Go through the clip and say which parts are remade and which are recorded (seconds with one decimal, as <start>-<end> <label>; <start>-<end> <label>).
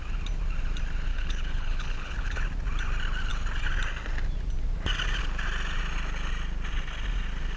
0.0-1.1 recorded; 1.1-2.4 remade; 2.4-7.6 recorded